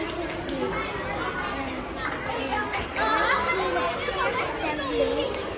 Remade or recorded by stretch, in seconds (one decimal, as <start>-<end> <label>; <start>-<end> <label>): 0.0-5.6 recorded